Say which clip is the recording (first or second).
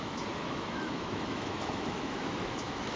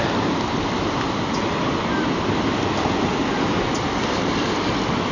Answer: second